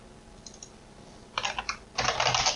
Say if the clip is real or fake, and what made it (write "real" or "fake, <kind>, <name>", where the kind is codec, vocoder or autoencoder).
real